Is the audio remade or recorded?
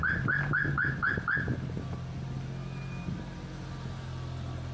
recorded